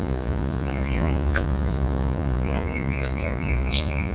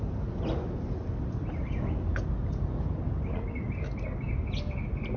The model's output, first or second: first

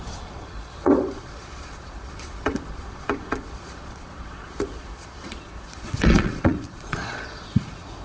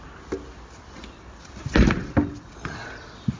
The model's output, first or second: first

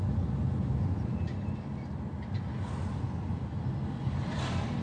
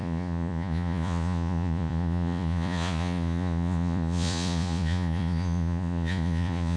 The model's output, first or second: second